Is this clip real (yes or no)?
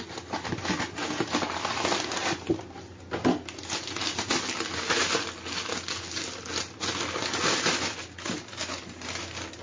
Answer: yes